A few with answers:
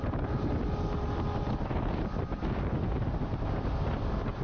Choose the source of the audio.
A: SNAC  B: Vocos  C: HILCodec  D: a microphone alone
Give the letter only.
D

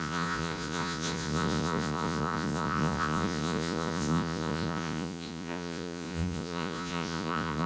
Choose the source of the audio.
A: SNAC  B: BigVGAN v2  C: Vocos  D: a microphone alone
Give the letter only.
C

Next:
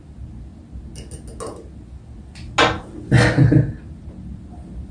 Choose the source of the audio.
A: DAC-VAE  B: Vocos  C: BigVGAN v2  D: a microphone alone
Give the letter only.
D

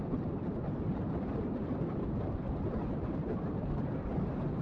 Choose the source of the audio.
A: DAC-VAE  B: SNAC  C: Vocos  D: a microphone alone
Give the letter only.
D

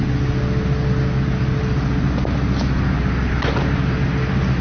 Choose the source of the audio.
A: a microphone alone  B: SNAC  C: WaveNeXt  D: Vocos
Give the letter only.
A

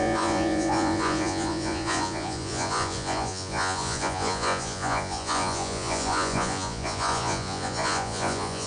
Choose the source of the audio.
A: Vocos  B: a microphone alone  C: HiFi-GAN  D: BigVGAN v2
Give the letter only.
A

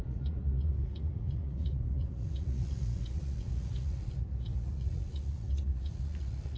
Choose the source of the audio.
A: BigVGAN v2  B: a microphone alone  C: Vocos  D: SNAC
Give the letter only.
C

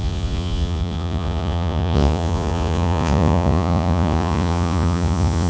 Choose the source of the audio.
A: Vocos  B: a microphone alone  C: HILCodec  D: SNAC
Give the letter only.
A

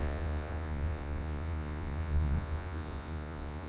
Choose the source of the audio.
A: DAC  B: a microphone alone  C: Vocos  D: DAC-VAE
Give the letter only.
C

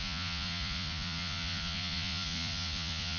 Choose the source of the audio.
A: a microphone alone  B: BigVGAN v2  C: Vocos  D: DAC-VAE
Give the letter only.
C